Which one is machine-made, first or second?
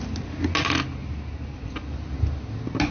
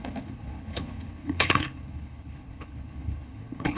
second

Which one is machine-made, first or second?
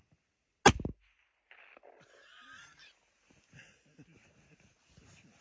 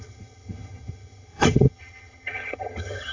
second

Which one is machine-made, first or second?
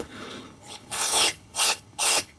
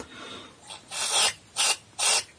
first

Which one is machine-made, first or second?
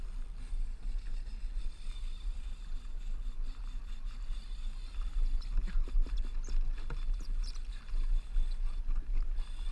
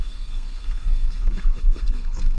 second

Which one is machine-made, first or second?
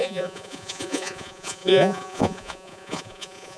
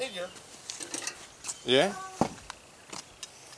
first